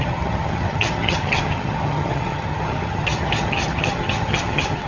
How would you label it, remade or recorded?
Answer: remade